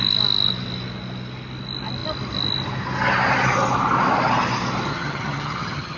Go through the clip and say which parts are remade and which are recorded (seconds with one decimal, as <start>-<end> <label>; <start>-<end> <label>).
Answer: 0.0-4.9 recorded; 4.9-6.0 remade